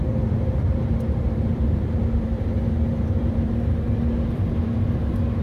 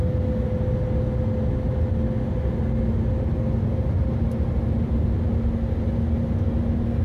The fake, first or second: first